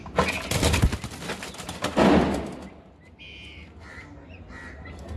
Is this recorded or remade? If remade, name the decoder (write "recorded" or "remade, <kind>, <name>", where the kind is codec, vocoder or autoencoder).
recorded